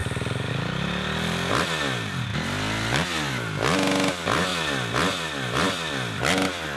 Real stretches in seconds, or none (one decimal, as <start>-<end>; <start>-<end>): 0.0-0.5; 2.3-4.1